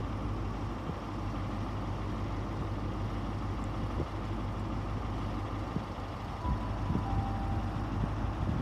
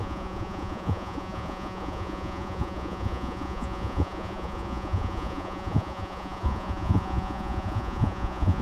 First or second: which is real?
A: first